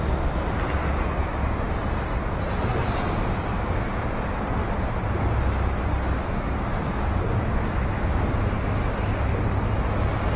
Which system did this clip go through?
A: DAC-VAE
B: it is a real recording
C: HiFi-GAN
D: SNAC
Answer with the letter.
B